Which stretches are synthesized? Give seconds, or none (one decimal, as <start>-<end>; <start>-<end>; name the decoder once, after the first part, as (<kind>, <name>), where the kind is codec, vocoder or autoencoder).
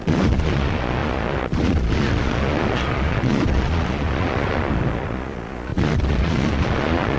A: 0.0-7.2 (vocoder, Vocos)